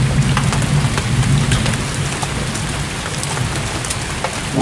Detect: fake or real real